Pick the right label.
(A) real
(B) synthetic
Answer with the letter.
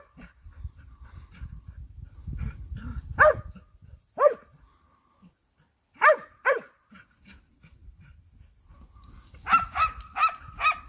A